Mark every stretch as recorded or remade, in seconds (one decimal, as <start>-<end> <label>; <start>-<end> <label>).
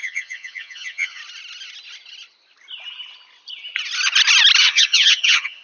0.0-1.2 remade; 1.2-4.6 recorded; 4.6-5.6 remade